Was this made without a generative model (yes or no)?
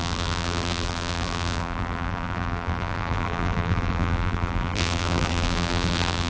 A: no